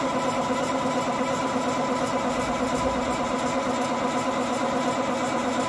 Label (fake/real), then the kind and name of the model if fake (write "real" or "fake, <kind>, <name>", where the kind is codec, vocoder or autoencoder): real